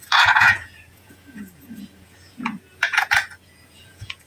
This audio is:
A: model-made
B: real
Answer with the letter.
A